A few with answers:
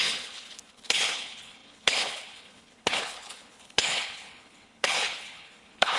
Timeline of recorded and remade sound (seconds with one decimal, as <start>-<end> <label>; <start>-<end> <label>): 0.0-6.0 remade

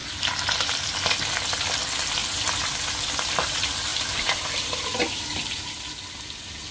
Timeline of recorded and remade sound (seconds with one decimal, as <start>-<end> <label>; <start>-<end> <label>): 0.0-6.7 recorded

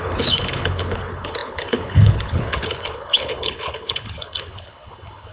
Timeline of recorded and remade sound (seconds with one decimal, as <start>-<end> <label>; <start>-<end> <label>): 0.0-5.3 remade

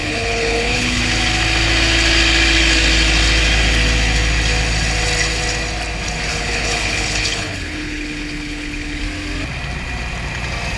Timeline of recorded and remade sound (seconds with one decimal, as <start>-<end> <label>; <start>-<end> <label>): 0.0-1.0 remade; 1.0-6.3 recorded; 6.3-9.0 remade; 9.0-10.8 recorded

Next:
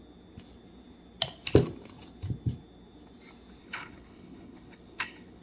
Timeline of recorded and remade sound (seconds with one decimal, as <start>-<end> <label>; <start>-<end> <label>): 0.0-3.6 recorded; 3.6-5.4 remade

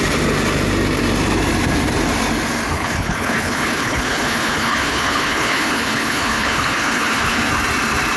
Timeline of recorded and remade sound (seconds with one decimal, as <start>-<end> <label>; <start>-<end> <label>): 0.0-2.7 recorded; 2.7-7.5 remade; 7.5-8.2 recorded